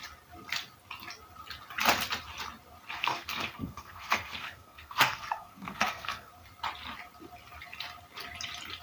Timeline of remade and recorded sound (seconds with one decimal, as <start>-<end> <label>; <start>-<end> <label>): 0.0-3.0 recorded; 3.0-6.3 remade; 6.3-8.8 recorded